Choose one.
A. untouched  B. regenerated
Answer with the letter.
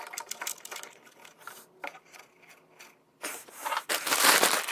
B